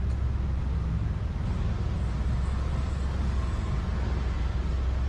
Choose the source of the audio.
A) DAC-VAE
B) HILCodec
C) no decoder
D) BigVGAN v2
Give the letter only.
C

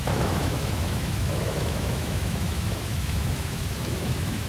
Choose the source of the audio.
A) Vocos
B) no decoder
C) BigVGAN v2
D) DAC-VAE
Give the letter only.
D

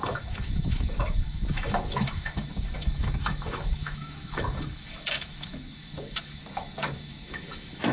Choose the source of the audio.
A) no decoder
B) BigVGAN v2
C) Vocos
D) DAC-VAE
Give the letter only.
D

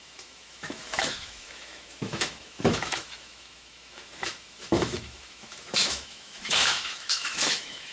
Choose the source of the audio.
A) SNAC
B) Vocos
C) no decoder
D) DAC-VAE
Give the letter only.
D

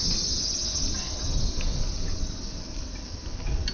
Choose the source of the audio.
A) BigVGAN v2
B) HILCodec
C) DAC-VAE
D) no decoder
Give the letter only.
D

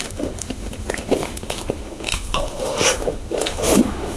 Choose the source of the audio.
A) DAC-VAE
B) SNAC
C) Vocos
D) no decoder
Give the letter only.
A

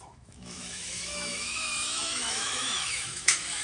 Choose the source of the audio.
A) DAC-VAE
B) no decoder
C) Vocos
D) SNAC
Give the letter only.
A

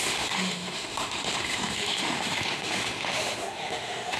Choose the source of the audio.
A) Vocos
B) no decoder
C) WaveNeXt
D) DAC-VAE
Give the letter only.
D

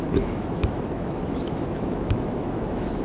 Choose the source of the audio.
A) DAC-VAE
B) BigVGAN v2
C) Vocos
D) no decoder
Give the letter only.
A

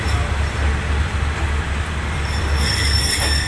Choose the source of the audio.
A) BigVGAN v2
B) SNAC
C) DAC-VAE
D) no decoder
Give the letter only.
D